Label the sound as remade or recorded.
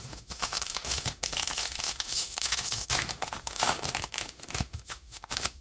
remade